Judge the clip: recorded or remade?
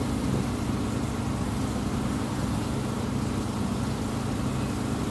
recorded